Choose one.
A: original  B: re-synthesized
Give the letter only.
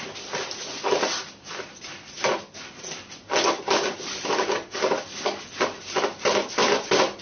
B